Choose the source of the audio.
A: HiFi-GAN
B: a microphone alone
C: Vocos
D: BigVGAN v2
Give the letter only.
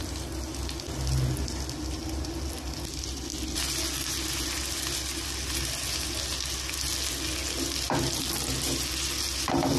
B